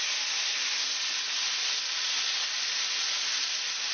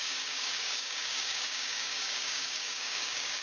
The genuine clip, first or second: first